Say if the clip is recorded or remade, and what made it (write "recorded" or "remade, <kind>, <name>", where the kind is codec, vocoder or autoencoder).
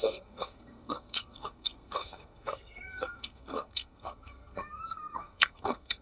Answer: remade, codec, SNAC